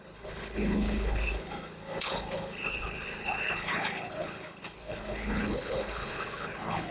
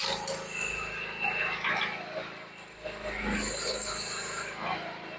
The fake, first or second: first